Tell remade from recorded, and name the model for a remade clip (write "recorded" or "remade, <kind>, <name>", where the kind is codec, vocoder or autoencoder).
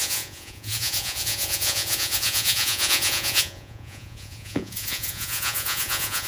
remade, vocoder, Vocos